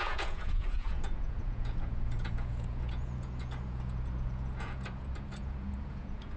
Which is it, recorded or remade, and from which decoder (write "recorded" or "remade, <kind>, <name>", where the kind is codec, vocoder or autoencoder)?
remade, vocoder, Vocos